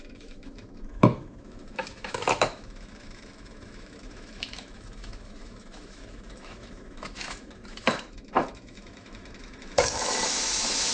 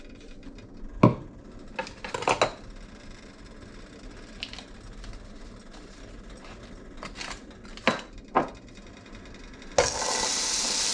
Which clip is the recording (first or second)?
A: second